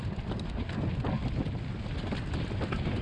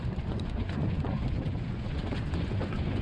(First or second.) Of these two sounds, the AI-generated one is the second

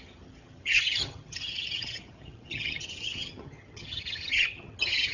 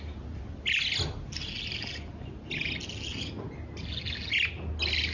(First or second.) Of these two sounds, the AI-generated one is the first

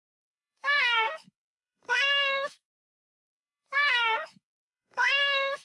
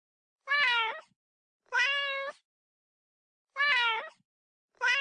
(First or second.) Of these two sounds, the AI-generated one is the first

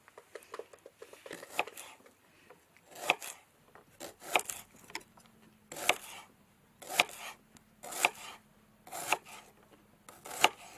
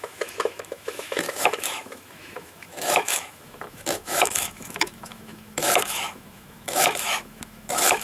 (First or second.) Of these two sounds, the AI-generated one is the second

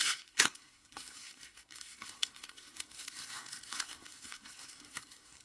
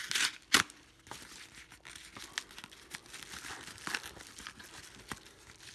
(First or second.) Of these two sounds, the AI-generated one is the first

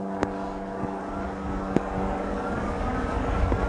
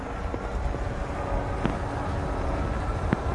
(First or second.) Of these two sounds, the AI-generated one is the first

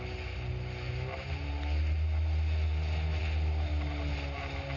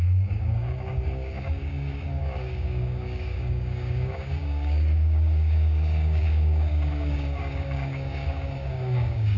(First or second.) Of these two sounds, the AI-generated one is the second